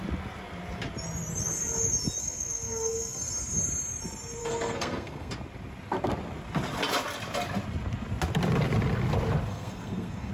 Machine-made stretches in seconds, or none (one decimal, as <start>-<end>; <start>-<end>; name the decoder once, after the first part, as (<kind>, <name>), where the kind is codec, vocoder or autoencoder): 2.2-3.3 (codec, SNAC); 4.4-5.3; 9.5-10.3